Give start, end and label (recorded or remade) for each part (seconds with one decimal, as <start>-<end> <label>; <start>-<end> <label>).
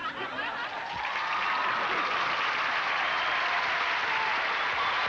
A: 0.0-5.1 recorded